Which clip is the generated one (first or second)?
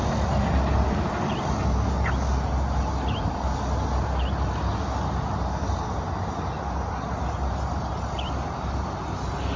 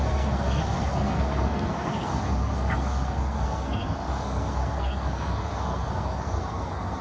second